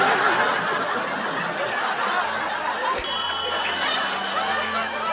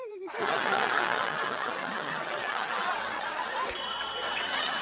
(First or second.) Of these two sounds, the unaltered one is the first